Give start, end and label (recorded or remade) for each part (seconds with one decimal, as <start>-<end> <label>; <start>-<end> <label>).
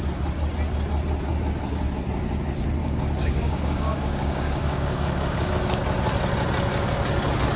0.0-2.8 recorded; 2.8-5.5 remade; 5.5-7.6 recorded